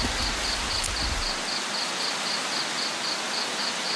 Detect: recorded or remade recorded